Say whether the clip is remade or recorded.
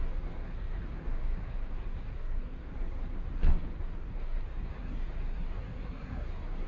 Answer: remade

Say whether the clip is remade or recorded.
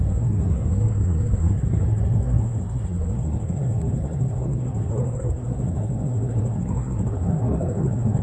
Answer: remade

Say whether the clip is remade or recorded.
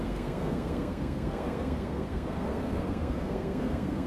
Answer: remade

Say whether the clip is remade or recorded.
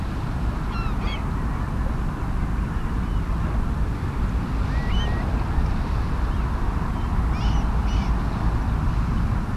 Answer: recorded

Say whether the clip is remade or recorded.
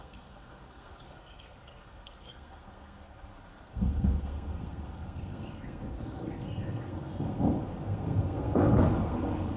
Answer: remade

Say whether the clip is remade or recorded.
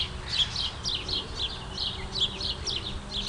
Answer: recorded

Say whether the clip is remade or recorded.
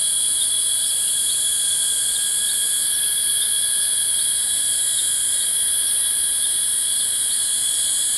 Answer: recorded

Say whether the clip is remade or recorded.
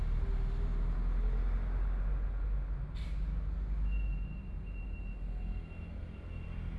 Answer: recorded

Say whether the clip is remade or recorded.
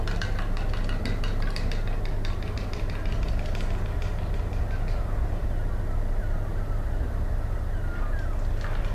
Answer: recorded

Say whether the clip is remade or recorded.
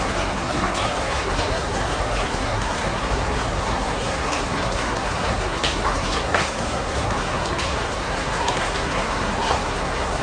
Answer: remade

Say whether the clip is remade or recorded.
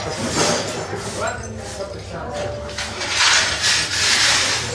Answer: recorded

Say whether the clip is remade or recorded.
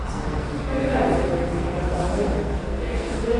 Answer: remade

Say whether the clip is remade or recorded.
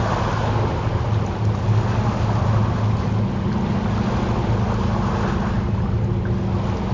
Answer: recorded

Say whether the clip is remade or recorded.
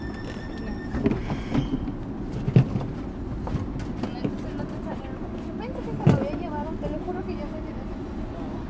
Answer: recorded